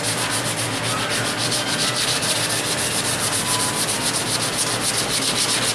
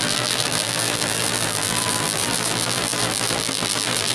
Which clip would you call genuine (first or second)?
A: first